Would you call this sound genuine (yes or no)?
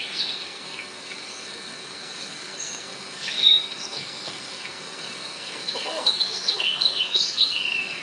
no